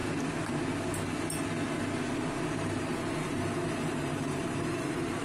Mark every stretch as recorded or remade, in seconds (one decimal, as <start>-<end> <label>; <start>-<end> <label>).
0.0-2.5 recorded; 2.5-5.2 remade